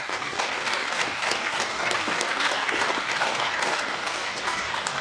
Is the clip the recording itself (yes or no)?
no